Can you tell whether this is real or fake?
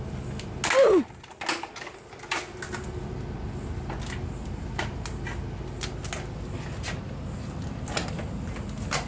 real